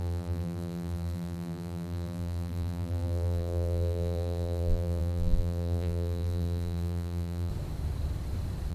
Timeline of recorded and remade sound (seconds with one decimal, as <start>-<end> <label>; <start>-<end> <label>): 0.0-7.5 remade; 7.5-8.7 recorded